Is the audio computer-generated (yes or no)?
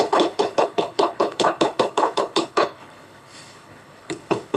yes